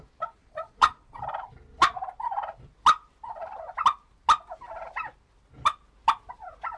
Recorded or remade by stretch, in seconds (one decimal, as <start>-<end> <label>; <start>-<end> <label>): 0.0-0.4 recorded; 0.4-1.2 remade; 1.2-6.8 recorded